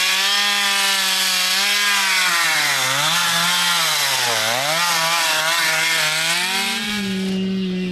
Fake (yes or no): no